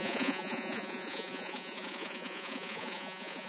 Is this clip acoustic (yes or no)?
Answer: no